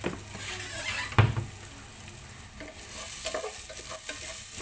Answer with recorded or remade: recorded